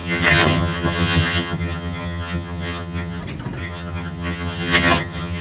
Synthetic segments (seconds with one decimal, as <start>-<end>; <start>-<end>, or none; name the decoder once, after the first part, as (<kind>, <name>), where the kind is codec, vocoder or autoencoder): 0.0-3.2 (vocoder, HiFi-GAN); 3.6-5.4